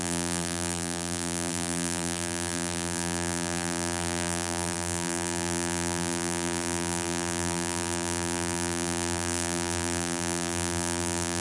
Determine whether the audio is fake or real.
fake